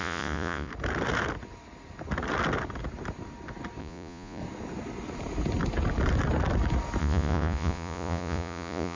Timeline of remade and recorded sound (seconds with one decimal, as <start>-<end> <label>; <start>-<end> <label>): 0.0-0.7 remade; 0.7-3.8 recorded; 3.8-4.4 remade; 4.4-7.0 recorded; 7.0-9.0 remade